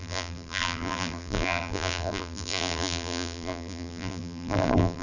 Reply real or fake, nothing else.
fake